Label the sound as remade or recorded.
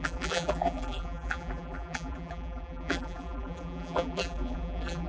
remade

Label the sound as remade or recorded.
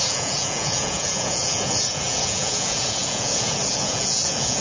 remade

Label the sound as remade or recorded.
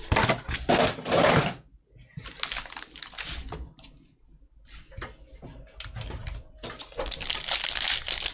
recorded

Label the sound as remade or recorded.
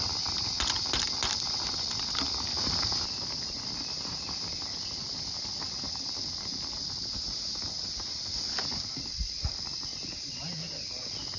recorded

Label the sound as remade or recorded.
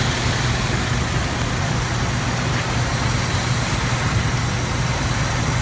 recorded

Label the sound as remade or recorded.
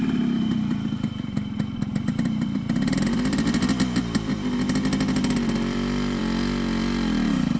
remade